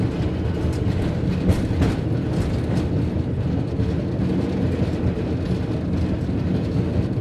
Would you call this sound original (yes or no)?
yes